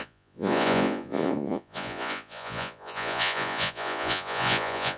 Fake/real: fake